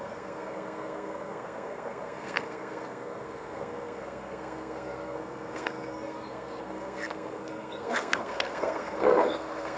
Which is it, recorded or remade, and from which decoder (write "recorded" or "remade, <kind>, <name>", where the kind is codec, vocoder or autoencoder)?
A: remade, codec, SNAC